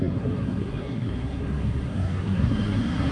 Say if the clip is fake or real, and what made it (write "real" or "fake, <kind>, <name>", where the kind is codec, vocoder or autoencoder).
fake, codec, SNAC